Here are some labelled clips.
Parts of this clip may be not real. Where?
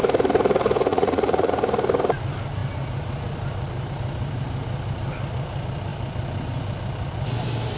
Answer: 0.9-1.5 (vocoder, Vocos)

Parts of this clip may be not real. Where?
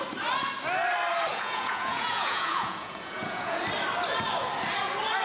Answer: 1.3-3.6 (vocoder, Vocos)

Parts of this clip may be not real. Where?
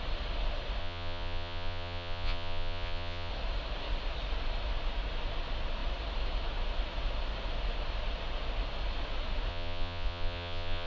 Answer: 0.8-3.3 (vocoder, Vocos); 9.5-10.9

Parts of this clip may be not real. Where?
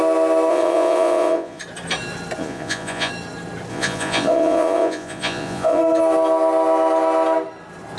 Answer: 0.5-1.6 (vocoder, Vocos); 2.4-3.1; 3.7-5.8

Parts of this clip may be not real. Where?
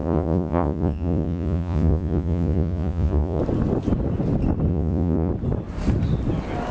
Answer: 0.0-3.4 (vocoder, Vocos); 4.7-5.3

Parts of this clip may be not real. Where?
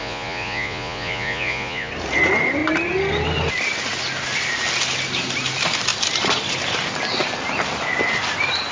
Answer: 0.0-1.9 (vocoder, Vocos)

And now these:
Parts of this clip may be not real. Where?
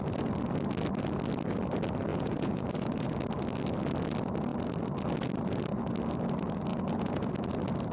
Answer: 2.1-3.1 (vocoder, Vocos); 6.7-7.3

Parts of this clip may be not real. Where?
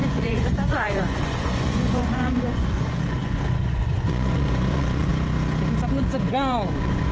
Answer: 0.0-5.1 (vocoder, Vocos); 6.0-7.1